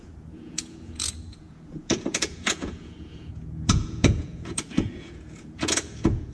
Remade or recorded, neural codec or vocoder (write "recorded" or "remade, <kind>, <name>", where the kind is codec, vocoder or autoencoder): remade, vocoder, Vocos